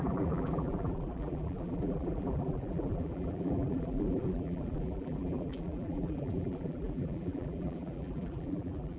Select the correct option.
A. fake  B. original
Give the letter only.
A